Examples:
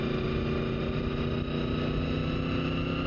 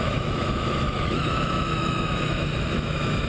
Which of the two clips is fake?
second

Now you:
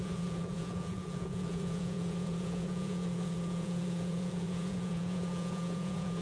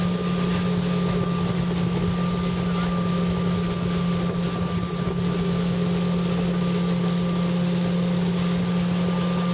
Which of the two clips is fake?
first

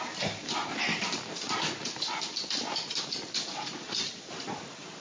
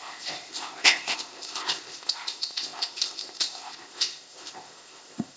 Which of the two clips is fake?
second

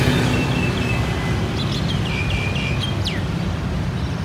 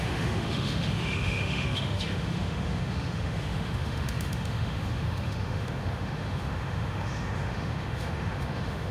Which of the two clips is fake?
second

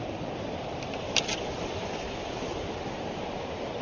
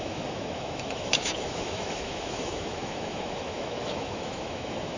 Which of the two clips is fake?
second